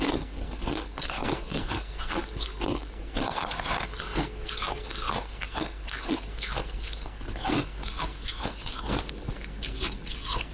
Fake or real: fake